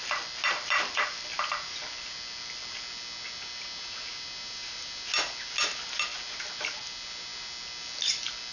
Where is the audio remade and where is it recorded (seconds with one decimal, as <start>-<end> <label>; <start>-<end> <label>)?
0.0-8.5 recorded